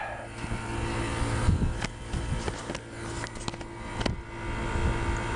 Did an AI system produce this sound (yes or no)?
no